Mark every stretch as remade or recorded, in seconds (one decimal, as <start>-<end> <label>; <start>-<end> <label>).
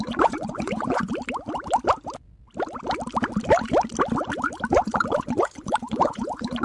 0.0-1.1 remade; 1.1-4.7 recorded; 4.7-6.6 remade